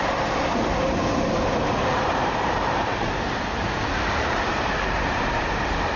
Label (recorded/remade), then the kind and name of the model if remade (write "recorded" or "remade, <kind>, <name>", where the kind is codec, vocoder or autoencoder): remade, vocoder, BigVGAN v2